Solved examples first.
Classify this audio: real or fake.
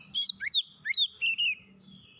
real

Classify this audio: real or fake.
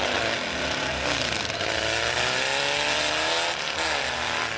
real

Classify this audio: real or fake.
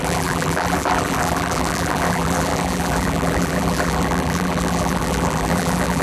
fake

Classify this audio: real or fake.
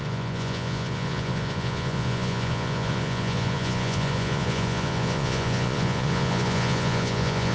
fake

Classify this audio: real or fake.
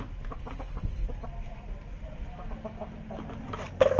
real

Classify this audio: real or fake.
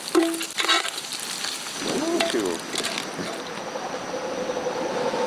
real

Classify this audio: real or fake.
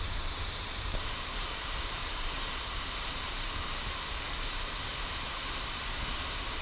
fake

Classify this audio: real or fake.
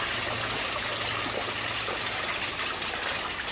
real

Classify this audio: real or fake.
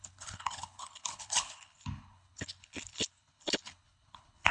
fake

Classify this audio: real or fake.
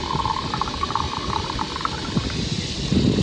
real